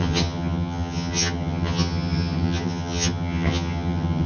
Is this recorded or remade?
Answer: remade